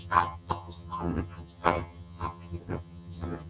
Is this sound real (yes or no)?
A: no